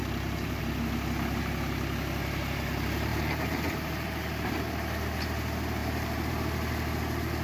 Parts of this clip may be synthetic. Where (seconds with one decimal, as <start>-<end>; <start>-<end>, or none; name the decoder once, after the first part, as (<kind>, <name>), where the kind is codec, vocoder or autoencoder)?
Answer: 0.0-0.6 (vocoder, BigVGAN v2); 3.1-4.5; 5.8-6.3